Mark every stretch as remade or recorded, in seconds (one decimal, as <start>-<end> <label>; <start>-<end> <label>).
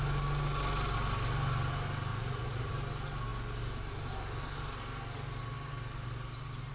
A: 0.0-2.1 recorded; 2.1-2.7 remade; 2.7-6.7 recorded